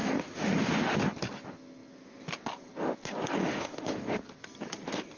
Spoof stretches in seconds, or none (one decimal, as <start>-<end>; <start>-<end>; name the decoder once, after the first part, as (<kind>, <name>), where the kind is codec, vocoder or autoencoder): 0.0-0.5 (autoencoder, DAC-VAE); 3.4-4.2

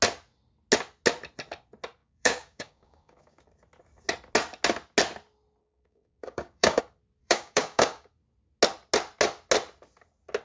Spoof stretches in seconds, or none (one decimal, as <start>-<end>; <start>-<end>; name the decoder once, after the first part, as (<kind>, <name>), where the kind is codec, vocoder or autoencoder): 2.0-3.4 (codec, DAC); 5.6-6.8; 7.2-8.1

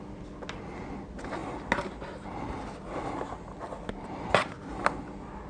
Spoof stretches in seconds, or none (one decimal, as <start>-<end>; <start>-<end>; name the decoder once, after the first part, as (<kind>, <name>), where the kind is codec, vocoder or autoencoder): none

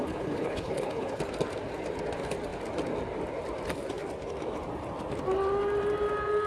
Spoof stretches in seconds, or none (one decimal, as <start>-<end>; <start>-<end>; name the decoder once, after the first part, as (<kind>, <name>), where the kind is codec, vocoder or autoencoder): 0.0-1.2 (codec, HILCodec)

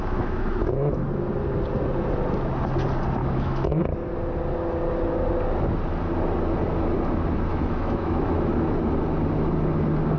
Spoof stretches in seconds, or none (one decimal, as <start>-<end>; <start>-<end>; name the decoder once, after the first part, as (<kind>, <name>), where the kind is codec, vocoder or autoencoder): 0.0-1.0 (autoencoder, DAC-VAE); 3.2-3.8; 7.5-8.5

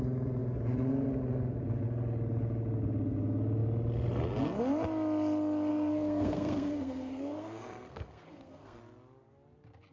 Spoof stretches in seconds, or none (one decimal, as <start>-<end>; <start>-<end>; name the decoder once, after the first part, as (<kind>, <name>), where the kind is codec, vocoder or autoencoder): 5.7-8.8 (codec, SNAC)